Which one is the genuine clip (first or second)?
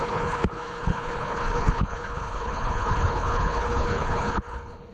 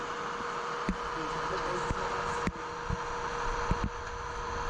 second